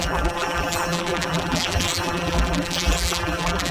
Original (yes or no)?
no